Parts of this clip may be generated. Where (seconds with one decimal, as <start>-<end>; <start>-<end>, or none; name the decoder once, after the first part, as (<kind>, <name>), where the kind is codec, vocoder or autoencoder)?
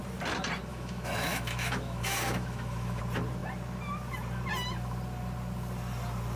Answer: 0.7-3.0 (autoencoder, DAC-VAE)